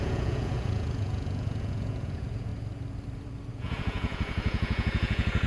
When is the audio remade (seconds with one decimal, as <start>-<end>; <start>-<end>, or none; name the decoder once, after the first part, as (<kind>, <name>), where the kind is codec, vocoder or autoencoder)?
0.0-2.5 (vocoder, Vocos); 3.5-5.5